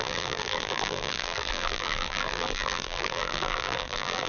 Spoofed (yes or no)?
yes